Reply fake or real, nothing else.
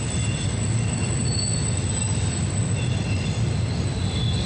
real